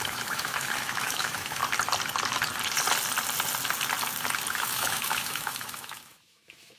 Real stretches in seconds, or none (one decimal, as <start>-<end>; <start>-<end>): 1.6-4.5

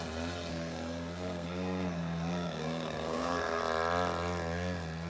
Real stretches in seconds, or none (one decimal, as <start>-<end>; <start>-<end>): 0.0-0.5; 3.6-5.1

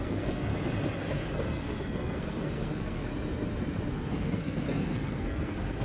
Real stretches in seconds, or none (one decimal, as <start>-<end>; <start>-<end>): 0.5-1.0; 3.1-3.9

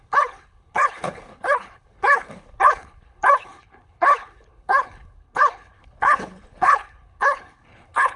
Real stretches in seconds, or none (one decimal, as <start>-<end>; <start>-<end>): none

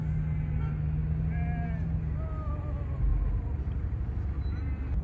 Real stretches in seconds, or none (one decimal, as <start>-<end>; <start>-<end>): 0.0-5.0

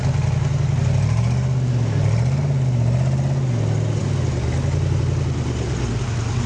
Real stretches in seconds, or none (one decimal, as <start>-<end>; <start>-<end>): 0.0-6.5